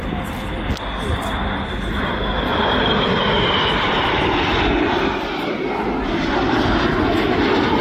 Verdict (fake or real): real